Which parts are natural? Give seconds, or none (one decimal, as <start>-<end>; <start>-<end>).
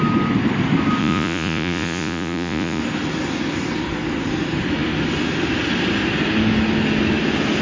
0.0-1.0; 2.8-7.6